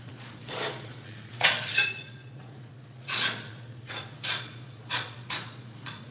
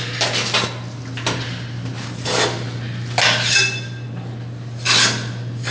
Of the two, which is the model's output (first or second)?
first